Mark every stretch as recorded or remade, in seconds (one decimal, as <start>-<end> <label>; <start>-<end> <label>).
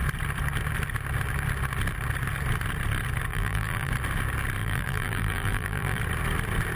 0.0-3.3 recorded; 3.3-3.9 remade; 3.9-4.6 recorded; 4.6-6.0 remade; 6.0-6.8 recorded